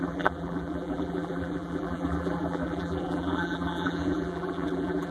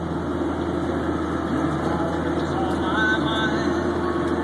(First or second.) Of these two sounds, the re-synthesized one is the first